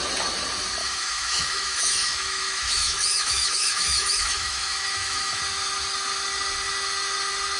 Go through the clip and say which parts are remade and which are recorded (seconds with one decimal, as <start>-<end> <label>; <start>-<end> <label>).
0.0-0.8 recorded; 0.8-5.4 remade; 5.4-7.6 recorded